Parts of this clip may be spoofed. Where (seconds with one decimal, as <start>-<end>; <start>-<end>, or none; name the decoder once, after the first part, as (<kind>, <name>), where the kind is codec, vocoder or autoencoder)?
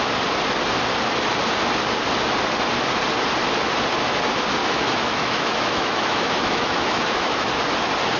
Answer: 4.6-7.5 (autoencoder, DAC-VAE)